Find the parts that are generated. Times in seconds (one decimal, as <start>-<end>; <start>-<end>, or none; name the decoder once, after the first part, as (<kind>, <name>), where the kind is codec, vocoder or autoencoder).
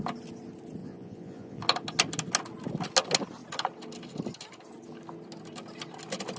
0.8-1.6 (vocoder, Vocos)